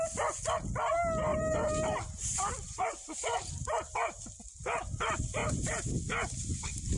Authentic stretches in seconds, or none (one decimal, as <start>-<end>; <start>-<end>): 0.0-1.3; 4.2-5.4; 5.9-7.0